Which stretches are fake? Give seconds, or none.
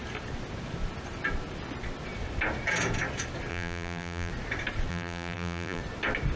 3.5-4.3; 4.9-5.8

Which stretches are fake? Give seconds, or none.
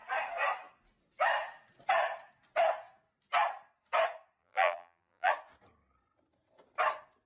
4.4-5.3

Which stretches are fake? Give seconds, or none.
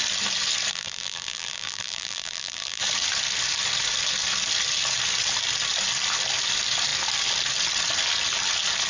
0.7-2.8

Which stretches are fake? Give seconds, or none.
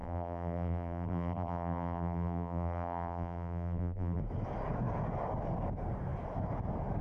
0.0-4.2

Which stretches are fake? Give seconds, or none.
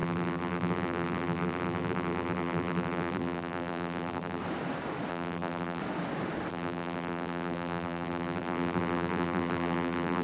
0.0-4.4; 5.1-5.8; 6.5-10.2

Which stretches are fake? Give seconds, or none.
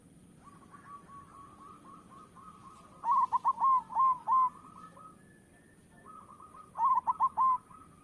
6.3-8.0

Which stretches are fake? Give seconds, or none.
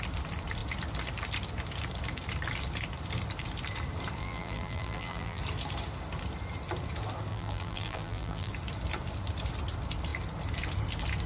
4.2-5.4; 7.3-8.5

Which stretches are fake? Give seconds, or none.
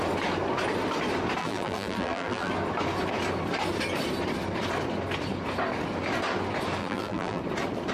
1.4-2.5; 6.8-7.4